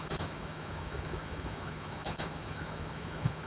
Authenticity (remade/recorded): remade